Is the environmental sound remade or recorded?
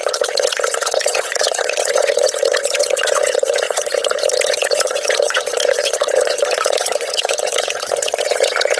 remade